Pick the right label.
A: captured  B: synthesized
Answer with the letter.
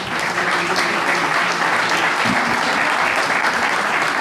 A